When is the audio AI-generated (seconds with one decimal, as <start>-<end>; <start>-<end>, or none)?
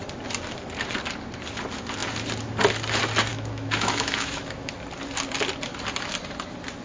3.3-4.7